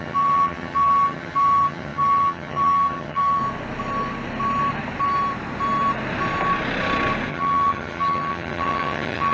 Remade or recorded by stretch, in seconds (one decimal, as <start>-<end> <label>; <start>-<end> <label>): 0.0-3.4 remade; 3.4-7.3 recorded; 7.3-9.3 remade